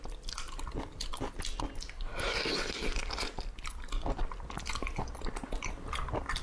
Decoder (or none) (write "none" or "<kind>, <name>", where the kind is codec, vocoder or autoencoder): none